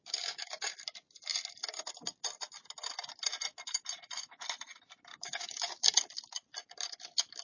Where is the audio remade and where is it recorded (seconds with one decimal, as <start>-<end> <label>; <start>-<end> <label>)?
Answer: 0.0-0.7 remade; 0.7-5.1 recorded; 5.1-5.8 remade; 5.8-7.4 recorded